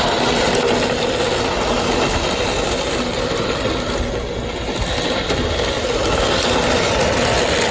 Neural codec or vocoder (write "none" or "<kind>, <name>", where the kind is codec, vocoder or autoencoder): none